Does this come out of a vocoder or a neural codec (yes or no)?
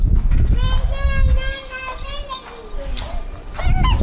no